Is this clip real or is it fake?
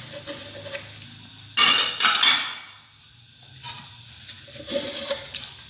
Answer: real